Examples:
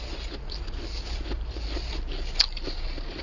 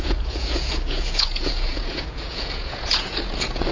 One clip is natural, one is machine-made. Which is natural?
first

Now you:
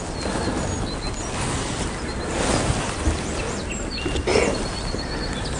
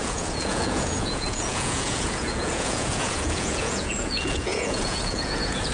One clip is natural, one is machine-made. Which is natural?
first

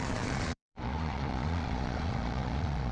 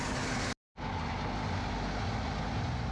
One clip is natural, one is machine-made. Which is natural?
second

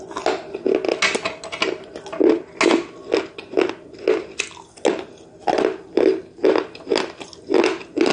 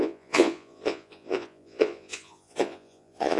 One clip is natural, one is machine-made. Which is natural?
first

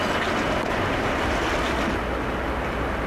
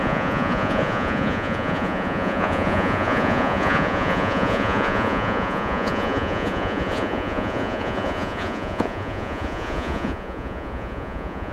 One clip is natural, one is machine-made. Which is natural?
first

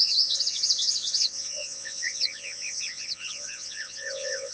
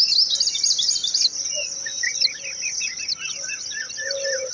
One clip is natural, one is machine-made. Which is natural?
second